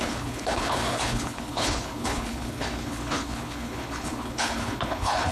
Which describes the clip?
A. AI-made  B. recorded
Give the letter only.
A